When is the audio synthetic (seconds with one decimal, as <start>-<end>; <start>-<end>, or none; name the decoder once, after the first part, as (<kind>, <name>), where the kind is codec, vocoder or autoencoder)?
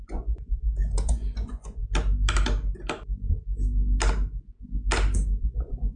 0.0-1.8 (vocoder, Vocos); 5.4-6.0